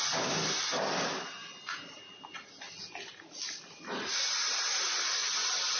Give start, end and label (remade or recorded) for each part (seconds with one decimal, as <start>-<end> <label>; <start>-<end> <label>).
0.0-5.8 recorded